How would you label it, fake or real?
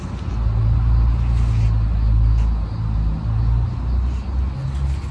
real